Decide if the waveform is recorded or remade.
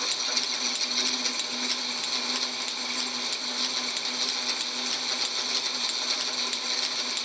recorded